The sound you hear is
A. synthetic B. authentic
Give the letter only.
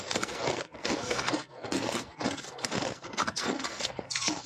A